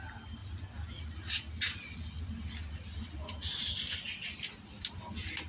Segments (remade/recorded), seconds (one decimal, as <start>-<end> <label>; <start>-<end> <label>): 0.0-5.5 recorded